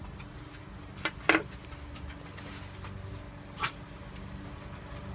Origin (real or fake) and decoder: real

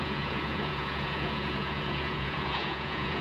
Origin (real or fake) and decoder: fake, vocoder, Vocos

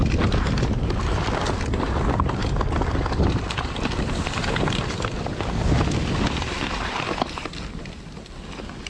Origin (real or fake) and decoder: real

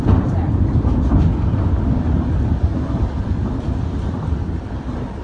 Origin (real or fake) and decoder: real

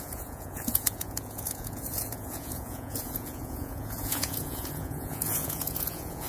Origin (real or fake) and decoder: fake, vocoder, Vocos